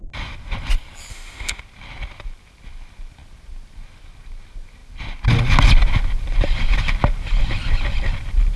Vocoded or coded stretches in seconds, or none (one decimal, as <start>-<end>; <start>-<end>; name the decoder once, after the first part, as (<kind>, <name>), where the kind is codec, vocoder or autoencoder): 1.1-1.6 (autoencoder, DAC-VAE)